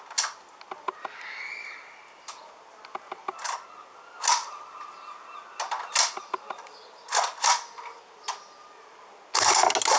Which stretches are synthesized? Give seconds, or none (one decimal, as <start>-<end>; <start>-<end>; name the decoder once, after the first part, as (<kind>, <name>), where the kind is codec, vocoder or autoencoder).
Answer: none